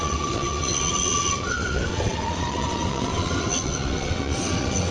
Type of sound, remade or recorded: remade